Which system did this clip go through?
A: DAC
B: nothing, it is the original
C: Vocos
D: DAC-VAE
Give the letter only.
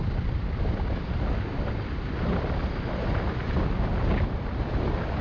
B